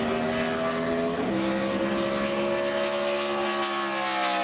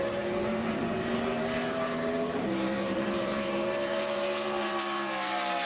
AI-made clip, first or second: second